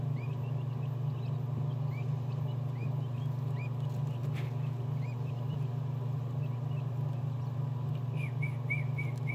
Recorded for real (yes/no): no